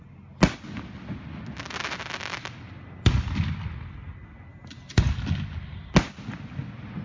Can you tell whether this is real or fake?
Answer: real